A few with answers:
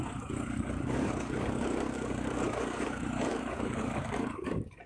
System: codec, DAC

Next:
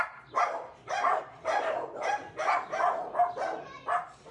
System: none